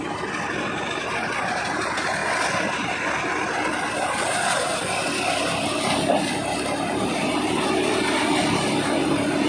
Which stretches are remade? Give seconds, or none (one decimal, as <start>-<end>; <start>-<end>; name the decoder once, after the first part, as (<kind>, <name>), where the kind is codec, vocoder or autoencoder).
none

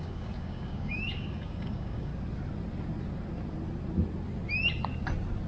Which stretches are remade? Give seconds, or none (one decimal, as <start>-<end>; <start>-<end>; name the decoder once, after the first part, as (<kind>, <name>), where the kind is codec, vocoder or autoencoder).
0.0-2.1 (codec, DAC)